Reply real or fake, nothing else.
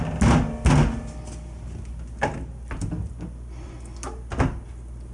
real